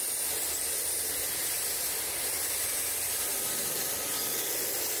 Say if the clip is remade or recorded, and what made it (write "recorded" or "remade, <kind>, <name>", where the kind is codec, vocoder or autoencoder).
recorded